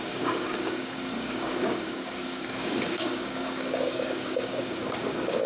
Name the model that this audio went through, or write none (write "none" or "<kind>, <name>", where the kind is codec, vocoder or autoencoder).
codec, DAC